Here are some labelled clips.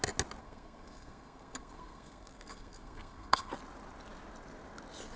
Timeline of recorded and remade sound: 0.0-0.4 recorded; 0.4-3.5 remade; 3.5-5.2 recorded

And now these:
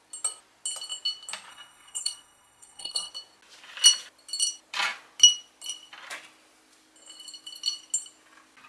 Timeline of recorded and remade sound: 0.0-1.5 recorded; 1.5-3.1 remade; 3.1-8.7 recorded

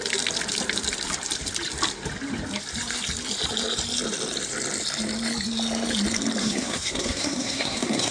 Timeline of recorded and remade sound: 0.0-6.4 recorded; 6.4-8.1 remade

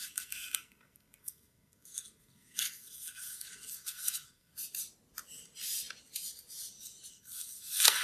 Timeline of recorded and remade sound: 0.0-4.5 remade; 4.5-7.1 recorded; 7.1-8.0 remade

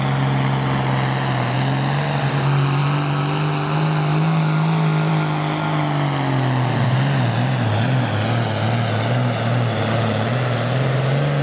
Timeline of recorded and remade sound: 0.0-11.4 recorded

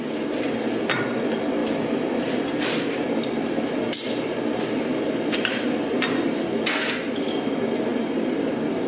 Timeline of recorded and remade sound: 0.0-8.9 recorded